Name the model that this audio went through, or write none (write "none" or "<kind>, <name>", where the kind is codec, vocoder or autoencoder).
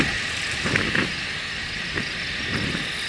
none